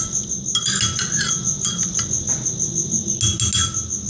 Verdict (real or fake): real